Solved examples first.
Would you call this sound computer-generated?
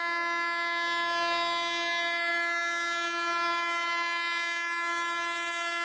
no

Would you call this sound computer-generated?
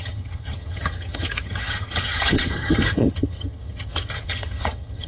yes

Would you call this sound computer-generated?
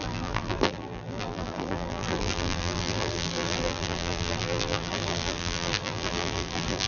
yes